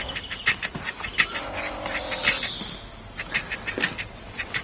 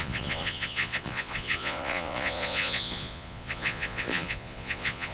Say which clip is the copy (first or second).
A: second